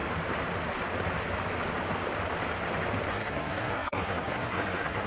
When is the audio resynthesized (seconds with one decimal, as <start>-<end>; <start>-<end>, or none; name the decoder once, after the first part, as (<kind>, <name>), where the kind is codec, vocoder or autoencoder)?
3.1-5.1 (codec, SNAC)